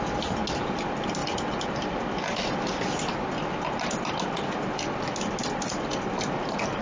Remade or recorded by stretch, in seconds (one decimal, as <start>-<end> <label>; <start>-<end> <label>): 0.0-6.8 recorded